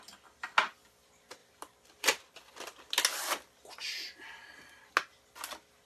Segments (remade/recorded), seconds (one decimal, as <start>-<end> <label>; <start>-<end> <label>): 0.0-5.9 recorded